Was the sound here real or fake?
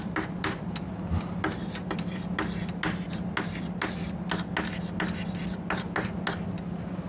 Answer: real